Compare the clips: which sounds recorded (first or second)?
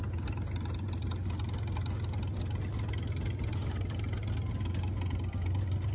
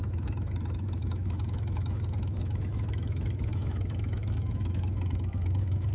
first